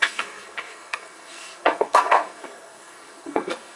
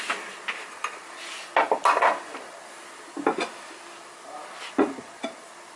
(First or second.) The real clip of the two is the second